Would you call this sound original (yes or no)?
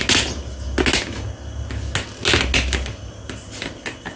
yes